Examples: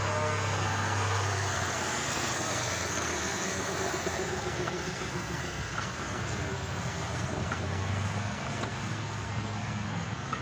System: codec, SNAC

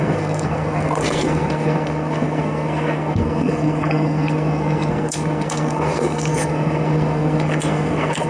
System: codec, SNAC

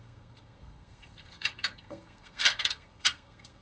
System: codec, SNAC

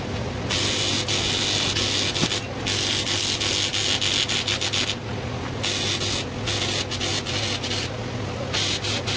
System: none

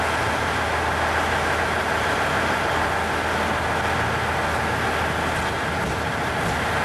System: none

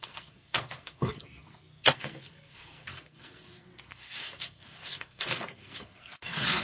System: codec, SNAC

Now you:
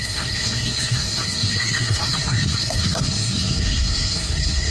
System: codec, SNAC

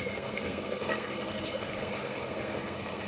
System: codec, SNAC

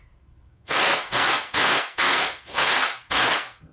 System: codec, SNAC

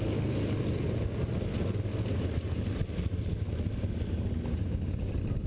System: none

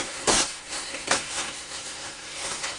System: codec, SNAC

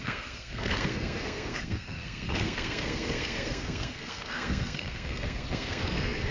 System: codec, SNAC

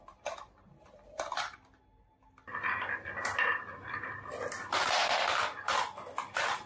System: none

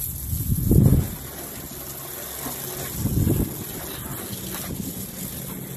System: none